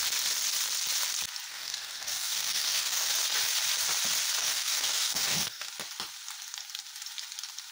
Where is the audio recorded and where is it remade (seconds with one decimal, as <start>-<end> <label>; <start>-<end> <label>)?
0.0-1.5 recorded; 1.5-3.1 remade; 3.1-4.4 recorded; 4.4-5.7 remade; 5.7-7.7 recorded